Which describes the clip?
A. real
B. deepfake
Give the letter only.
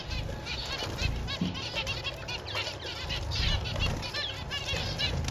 A